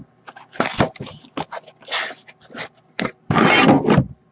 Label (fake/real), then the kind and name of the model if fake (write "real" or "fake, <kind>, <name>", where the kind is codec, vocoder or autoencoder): real